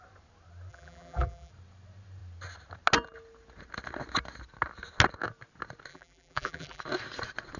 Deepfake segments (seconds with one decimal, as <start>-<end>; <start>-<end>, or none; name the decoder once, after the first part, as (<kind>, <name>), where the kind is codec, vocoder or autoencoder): 0.7-1.5 (vocoder, BigVGAN v2); 5.9-6.8